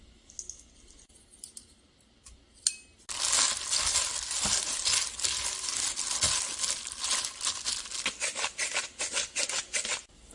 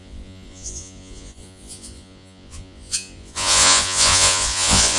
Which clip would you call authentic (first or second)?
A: first